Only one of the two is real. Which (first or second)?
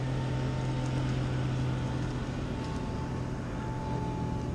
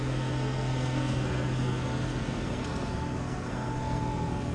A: first